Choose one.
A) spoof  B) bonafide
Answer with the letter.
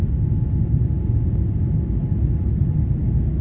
B